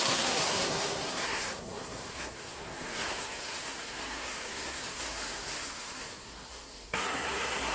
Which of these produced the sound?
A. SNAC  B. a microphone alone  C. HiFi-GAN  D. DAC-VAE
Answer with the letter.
A